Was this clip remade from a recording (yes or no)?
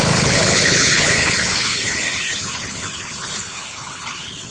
yes